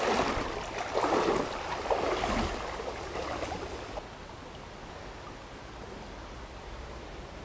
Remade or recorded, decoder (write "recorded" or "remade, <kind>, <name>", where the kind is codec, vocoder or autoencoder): recorded